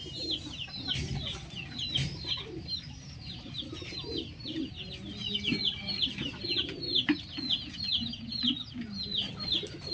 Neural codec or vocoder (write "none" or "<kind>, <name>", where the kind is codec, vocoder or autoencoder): none